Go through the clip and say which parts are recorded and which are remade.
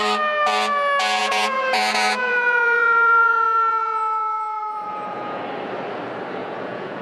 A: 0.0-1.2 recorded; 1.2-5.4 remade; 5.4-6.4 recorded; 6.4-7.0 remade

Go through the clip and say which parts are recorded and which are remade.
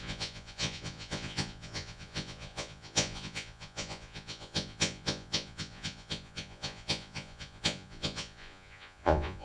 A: 0.0-9.4 remade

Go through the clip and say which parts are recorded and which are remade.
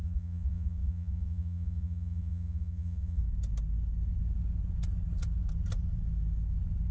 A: 0.0-3.2 remade; 3.2-6.9 recorded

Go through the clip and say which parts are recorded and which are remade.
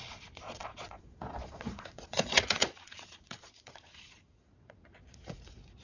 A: 0.0-5.8 remade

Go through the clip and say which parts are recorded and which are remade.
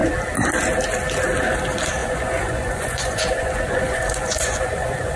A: 0.0-2.0 recorded; 2.0-5.2 remade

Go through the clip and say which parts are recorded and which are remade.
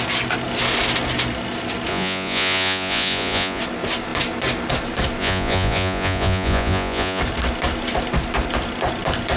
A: 0.0-1.9 recorded; 1.9-3.6 remade; 3.6-5.2 recorded; 5.2-7.2 remade; 7.2-9.4 recorded